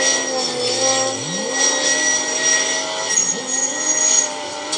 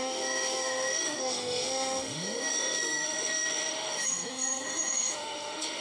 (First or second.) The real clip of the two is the first